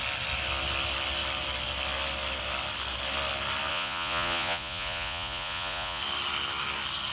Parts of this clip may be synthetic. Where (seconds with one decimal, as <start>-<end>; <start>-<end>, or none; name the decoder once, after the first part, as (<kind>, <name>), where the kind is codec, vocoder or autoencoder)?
3.7-6.0 (vocoder, Vocos)